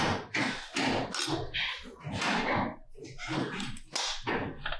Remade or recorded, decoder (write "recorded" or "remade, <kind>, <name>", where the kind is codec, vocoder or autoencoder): recorded